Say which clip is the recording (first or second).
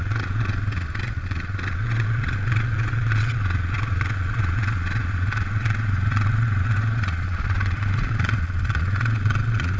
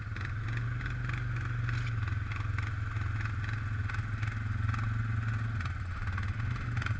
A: second